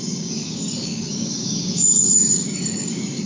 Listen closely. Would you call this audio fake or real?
fake